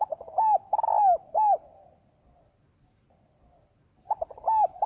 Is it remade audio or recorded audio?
recorded